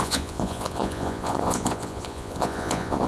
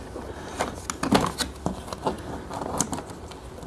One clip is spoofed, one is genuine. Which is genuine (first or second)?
second